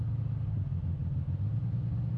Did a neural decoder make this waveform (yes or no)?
no